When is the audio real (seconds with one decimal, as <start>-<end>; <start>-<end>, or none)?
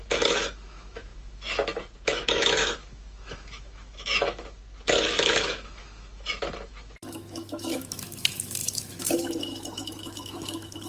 none